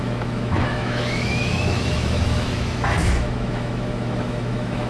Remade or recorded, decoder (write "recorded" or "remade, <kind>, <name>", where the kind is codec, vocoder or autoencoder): remade, autoencoder, DAC-VAE